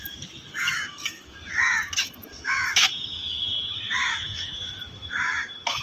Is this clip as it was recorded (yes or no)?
no